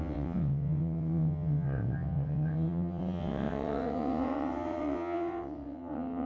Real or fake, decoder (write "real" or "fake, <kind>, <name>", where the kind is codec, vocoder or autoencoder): fake, vocoder, WaveNeXt